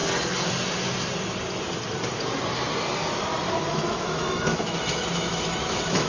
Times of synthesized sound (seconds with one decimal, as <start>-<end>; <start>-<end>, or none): 3.7-6.1